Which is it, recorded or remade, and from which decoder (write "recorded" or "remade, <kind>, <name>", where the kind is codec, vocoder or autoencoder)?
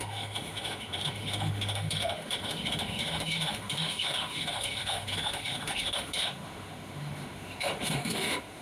remade, autoencoder, DAC-VAE